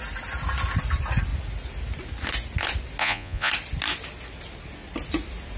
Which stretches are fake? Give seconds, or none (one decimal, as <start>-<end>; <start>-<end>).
3.0-3.5